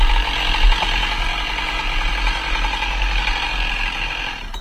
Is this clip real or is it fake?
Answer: real